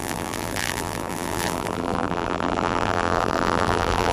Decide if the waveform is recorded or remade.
remade